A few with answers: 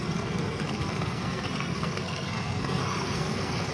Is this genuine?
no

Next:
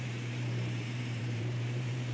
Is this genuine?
no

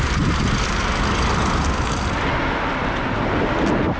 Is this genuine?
yes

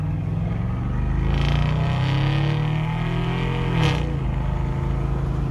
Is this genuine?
yes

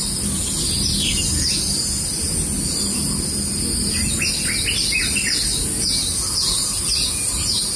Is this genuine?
yes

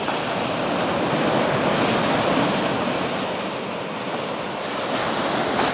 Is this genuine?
yes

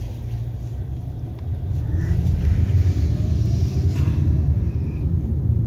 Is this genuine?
yes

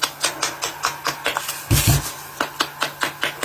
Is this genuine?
yes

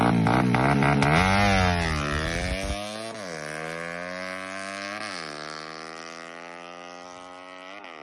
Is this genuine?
yes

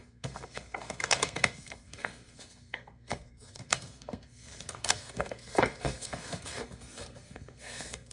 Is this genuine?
no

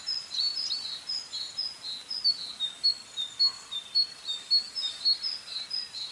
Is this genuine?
yes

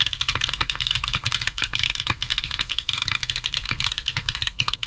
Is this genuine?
no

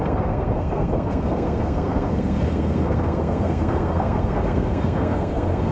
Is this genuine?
no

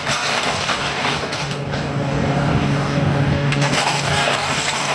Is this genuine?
no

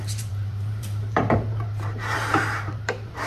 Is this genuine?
no